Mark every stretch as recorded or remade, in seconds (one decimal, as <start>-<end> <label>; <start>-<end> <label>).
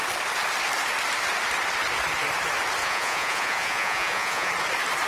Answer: 0.0-2.8 recorded; 2.8-4.5 remade; 4.5-5.1 recorded